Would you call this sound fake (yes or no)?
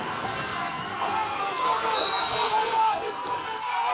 yes